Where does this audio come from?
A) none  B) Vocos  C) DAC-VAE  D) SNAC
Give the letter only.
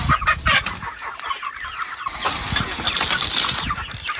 A